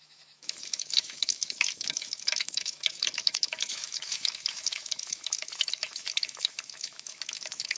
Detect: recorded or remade remade